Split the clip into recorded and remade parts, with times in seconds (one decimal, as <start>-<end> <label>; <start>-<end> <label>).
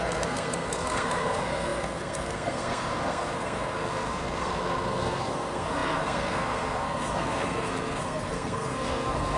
0.0-9.4 remade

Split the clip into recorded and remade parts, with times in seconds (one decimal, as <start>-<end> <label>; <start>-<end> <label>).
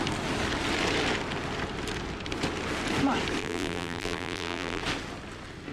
0.0-3.4 recorded; 3.4-4.8 remade; 4.8-5.7 recorded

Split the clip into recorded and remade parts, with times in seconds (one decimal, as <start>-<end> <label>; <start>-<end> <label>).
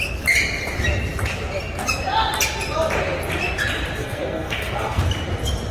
0.0-4.0 recorded; 4.0-5.0 remade; 5.0-5.7 recorded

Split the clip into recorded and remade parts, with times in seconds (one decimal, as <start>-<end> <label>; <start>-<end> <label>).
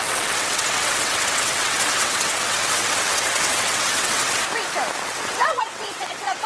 0.0-4.4 remade; 4.4-5.0 recorded; 5.0-6.5 remade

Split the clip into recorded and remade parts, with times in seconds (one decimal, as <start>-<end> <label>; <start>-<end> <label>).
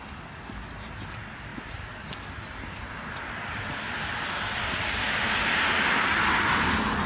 0.0-7.1 recorded